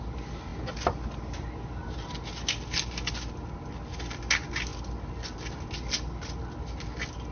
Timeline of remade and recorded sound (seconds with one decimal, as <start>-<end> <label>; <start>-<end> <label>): 0.0-7.3 recorded